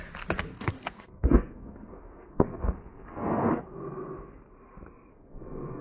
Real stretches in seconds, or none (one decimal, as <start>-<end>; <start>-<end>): 0.0-0.5; 3.5-5.1